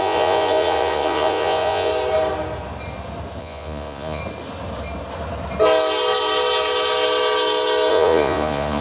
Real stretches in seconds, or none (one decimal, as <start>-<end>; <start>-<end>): 1.9-3.4; 4.2-7.9